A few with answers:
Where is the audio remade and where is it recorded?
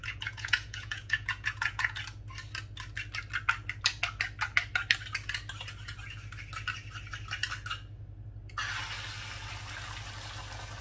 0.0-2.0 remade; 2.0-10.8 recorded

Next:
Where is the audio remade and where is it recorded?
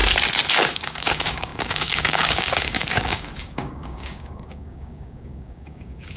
0.0-0.5 recorded; 0.5-6.2 remade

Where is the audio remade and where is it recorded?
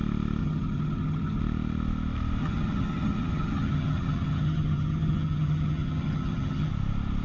0.0-0.4 recorded; 0.4-1.4 remade; 1.4-2.4 recorded; 2.4-6.7 remade; 6.7-7.2 recorded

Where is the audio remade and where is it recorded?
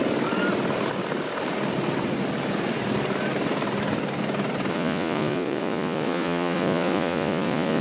0.0-4.7 recorded; 4.7-7.8 remade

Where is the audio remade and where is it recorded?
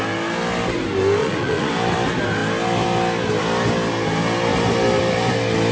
0.0-1.2 recorded; 1.2-1.7 remade; 1.7-5.7 recorded